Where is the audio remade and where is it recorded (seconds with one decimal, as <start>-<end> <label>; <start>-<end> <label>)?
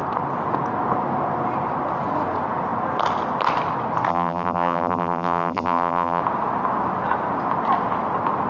0.0-4.1 recorded; 4.1-6.2 remade; 6.2-8.5 recorded